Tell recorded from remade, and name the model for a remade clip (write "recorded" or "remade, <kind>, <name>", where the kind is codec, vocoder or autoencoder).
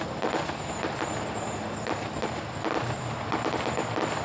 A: recorded